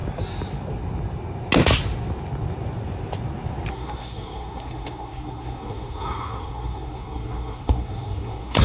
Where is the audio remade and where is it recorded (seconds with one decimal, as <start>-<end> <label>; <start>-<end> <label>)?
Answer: 0.0-3.7 recorded; 3.7-8.6 remade